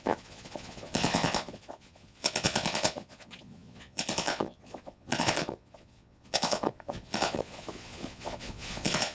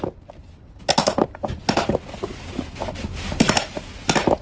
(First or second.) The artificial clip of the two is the first